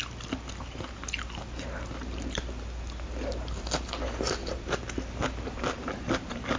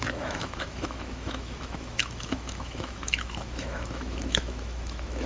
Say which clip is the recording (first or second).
first